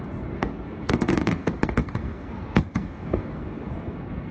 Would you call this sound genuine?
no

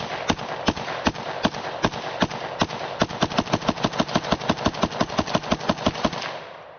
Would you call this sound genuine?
yes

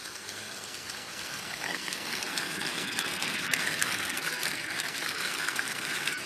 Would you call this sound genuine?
no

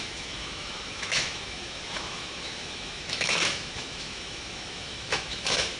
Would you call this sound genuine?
no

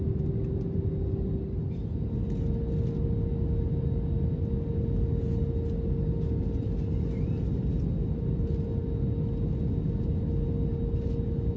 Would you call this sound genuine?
yes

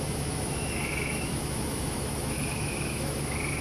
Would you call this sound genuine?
no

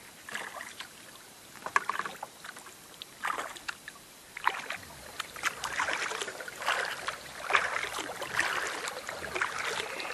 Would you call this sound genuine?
yes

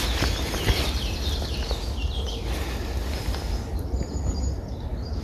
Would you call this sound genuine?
yes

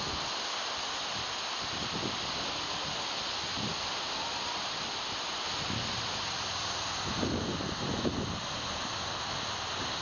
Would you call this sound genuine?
yes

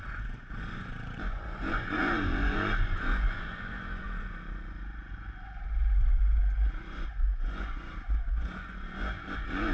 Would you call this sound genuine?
no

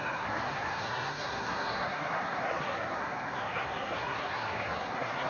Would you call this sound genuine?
no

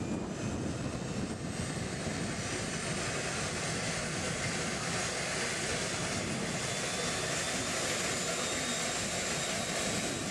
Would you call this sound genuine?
yes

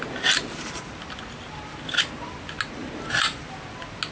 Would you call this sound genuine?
yes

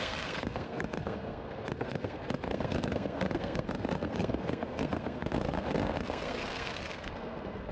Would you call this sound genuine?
no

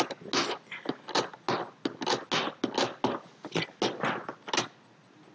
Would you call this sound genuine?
yes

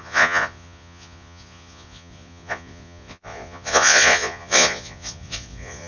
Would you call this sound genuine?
no